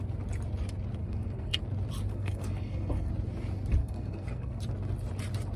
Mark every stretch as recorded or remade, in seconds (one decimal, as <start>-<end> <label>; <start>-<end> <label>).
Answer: 0.0-1.0 recorded; 1.0-1.6 remade; 1.6-2.1 recorded; 2.1-3.1 remade; 3.1-3.8 recorded; 3.8-4.6 remade; 4.6-5.6 recorded